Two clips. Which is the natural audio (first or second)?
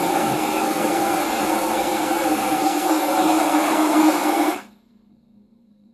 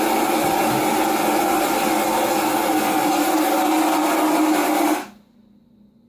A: second